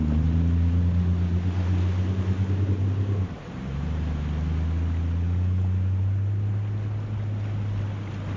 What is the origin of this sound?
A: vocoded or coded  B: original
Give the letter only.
B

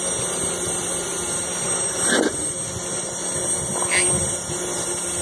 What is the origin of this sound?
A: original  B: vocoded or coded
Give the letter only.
A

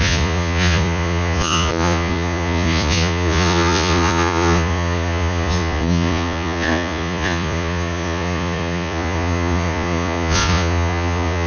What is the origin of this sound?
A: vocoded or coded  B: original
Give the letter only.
A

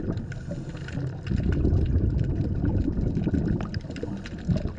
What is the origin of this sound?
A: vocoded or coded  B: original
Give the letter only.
B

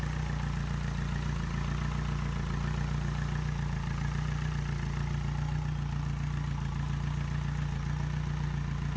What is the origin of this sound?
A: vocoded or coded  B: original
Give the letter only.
B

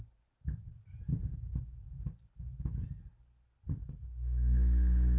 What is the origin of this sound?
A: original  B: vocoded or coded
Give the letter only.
A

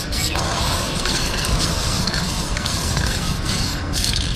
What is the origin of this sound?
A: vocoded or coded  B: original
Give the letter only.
A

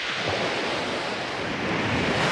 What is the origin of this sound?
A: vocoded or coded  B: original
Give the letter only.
B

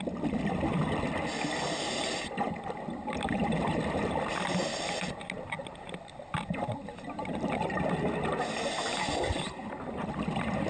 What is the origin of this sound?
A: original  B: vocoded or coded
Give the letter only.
A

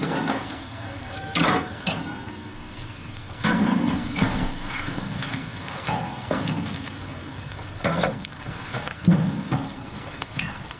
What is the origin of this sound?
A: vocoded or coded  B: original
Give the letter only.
A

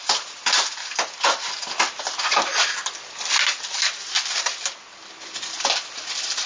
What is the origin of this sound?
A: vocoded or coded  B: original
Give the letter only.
B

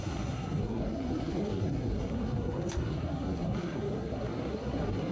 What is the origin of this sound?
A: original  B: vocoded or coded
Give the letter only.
B